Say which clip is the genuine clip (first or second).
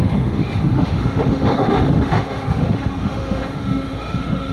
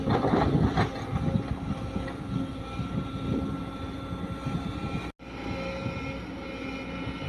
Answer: second